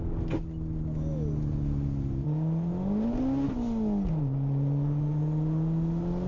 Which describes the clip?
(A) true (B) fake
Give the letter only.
A